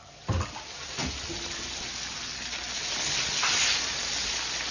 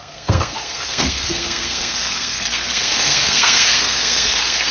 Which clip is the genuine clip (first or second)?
first